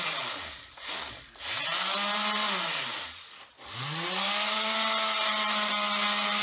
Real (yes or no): yes